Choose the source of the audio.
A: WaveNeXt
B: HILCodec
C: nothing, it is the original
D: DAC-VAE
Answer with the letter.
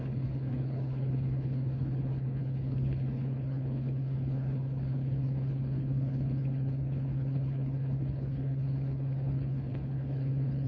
B